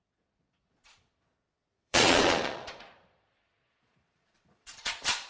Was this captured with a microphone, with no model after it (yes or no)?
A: no